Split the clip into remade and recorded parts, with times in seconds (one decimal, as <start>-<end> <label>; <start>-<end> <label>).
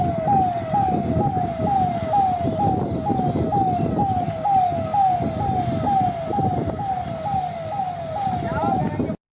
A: 0.0-9.3 recorded